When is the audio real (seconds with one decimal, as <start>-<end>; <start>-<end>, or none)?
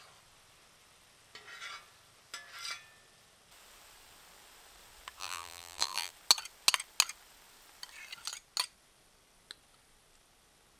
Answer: 0.0-5.2; 6.1-10.8